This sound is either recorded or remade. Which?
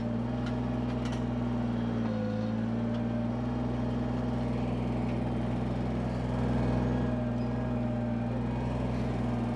recorded